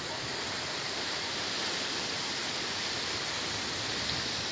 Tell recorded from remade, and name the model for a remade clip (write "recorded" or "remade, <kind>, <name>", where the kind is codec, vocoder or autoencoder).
recorded